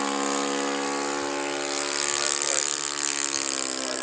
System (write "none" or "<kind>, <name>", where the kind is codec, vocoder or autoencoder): none